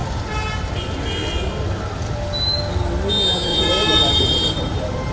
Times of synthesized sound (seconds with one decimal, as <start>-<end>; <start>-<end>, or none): 3.5-5.1